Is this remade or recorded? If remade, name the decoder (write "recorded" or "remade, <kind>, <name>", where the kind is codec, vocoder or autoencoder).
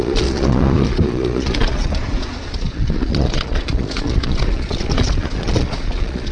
remade, vocoder, Vocos